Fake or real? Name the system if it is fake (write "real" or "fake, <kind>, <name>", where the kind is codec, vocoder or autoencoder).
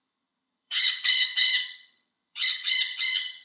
fake, vocoder, HiFi-GAN